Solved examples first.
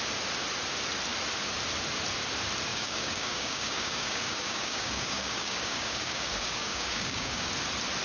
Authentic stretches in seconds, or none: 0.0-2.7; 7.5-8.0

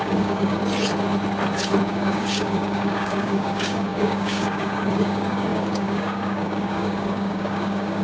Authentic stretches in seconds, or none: 0.6-1.9

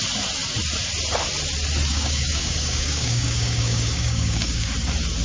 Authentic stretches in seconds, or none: 0.0-1.9; 4.7-5.2